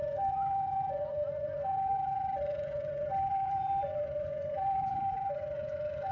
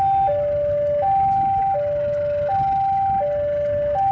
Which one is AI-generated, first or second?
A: first